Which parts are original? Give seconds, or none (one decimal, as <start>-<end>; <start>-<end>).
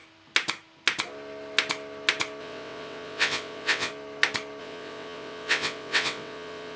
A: 0.0-2.4; 3.9-4.6